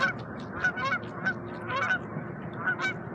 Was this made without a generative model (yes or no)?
yes